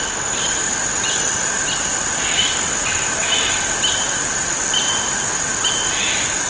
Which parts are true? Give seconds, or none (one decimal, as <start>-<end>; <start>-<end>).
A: 0.0-6.5